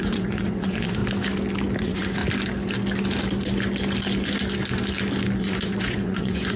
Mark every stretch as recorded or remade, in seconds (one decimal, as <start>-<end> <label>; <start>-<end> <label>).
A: 0.0-1.0 remade; 1.0-1.8 recorded; 1.8-2.2 remade; 2.2-5.4 recorded; 5.4-6.6 remade